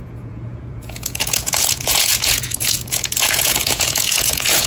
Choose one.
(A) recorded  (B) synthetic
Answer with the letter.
B